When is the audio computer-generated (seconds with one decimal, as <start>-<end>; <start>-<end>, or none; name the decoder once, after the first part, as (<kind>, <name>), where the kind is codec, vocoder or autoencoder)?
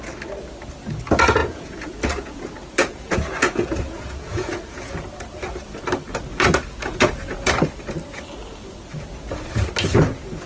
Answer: 1.4-4.9 (vocoder, Vocos); 6.3-7.5